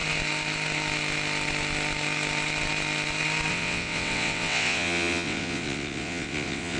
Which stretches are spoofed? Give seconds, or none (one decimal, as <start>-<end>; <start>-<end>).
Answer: 3.5-6.8